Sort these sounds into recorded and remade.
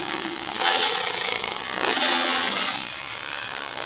remade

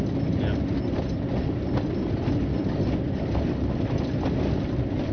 recorded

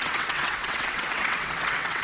remade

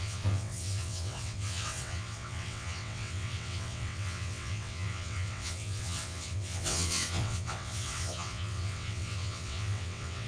remade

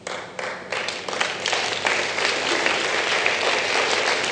recorded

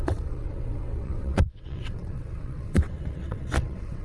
remade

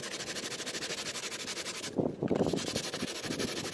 recorded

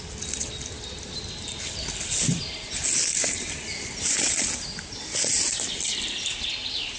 recorded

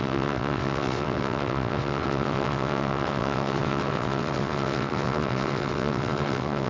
remade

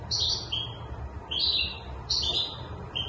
recorded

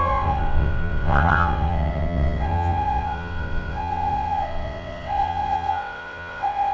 remade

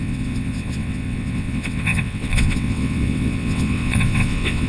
remade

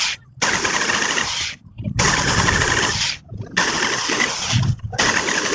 recorded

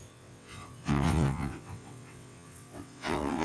remade